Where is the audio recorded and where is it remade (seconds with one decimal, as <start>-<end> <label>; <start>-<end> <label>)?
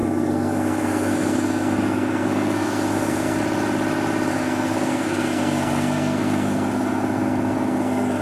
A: 0.0-3.4 remade; 3.4-4.3 recorded; 4.3-8.2 remade